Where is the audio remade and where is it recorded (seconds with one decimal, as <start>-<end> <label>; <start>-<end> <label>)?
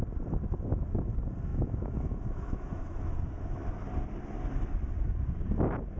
0.0-1.5 recorded; 1.5-3.1 remade; 3.1-6.0 recorded